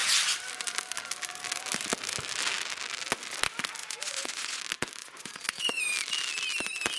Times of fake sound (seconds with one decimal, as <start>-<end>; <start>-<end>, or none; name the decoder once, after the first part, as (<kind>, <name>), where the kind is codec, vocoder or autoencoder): 3.8-4.6 (vocoder, Vocos); 5.0-5.8